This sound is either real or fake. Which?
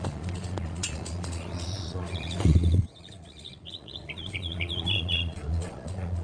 fake